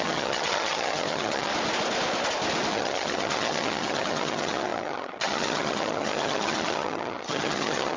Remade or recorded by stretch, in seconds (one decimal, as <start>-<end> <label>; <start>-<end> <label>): 0.0-1.5 remade; 1.5-2.7 recorded; 2.7-8.0 remade